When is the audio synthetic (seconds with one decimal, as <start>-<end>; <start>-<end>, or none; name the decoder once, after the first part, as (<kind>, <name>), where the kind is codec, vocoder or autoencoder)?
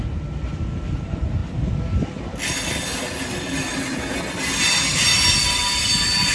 none